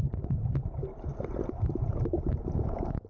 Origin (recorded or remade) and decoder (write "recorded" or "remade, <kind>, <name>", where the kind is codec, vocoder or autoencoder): remade, vocoder, BigVGAN v2